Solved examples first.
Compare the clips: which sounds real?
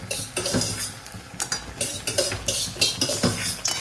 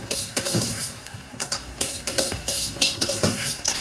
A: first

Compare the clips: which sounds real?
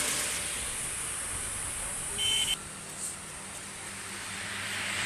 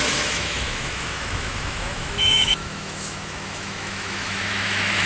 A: first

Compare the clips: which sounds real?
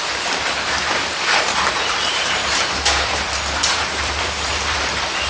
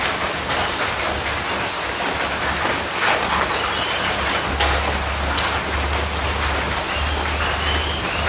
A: second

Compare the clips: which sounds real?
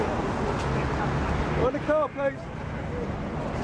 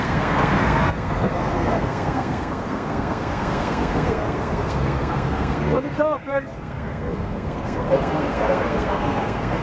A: first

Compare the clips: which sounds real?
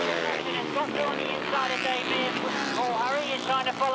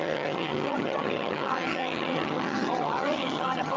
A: first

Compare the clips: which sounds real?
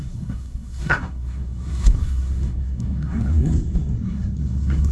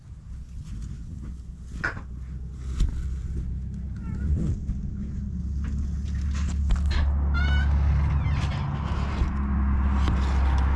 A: second